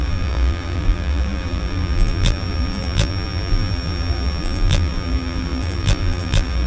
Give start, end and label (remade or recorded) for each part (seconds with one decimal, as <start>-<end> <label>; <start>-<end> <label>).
0.0-6.7 remade